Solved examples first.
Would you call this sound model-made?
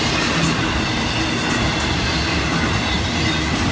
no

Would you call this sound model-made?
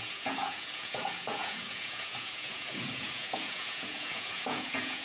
yes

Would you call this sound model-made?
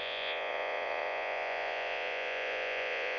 yes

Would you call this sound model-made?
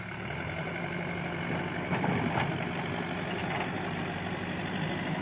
no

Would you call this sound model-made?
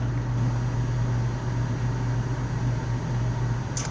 no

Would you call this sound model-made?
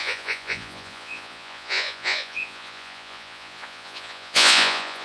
yes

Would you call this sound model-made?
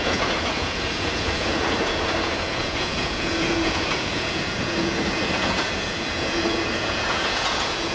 yes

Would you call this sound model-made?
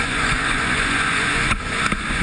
yes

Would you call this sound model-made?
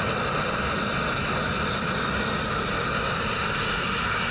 no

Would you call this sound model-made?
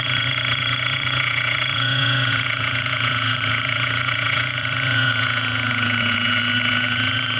yes